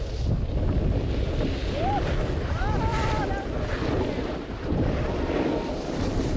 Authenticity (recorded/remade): remade